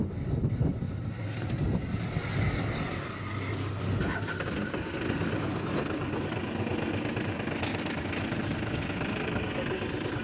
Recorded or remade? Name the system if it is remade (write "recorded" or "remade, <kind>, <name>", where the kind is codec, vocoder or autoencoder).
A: recorded